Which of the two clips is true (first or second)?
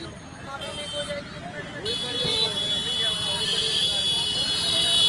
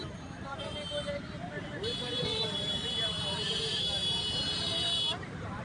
first